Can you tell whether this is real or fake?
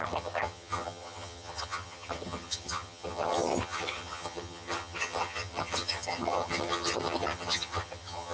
fake